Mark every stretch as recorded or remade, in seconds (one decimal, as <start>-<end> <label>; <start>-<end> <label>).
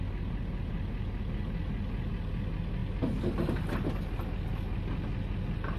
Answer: 0.0-5.8 recorded